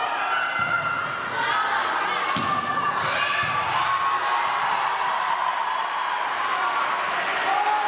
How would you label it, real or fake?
real